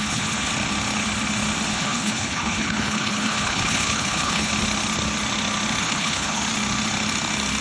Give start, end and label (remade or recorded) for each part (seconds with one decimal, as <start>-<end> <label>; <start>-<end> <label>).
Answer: 0.0-0.5 remade; 0.5-1.7 recorded; 1.7-4.5 remade; 4.5-5.8 recorded; 5.8-6.4 remade; 6.4-7.6 recorded